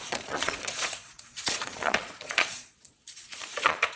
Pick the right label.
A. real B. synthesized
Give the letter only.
B